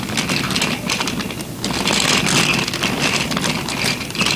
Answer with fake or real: real